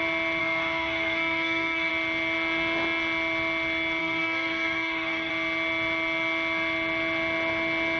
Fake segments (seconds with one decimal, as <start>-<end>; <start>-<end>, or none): 0.4-1.9; 4.0-5.3